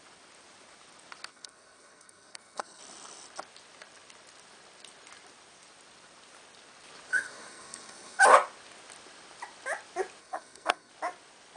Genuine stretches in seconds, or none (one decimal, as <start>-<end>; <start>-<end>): 0.0-1.3; 2.8-7.1; 8.2-10.2; 10.9-11.6